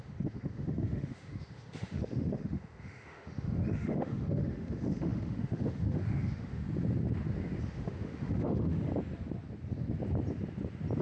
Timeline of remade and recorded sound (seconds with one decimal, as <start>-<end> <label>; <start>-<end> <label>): 0.0-6.6 remade; 6.6-7.6 recorded; 7.6-8.9 remade; 8.9-11.0 recorded